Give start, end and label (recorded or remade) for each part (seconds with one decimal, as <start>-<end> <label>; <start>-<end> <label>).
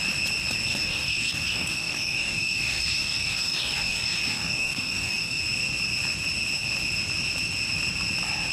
0.0-0.7 recorded; 0.7-5.4 remade; 5.4-8.5 recorded